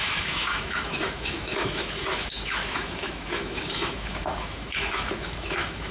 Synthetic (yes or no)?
yes